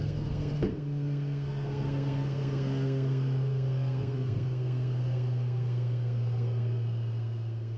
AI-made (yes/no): yes